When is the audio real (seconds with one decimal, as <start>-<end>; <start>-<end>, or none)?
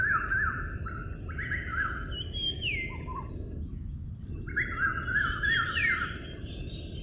0.0-7.0